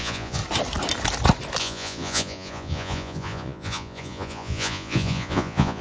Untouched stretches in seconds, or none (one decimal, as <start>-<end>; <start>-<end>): 0.4-1.6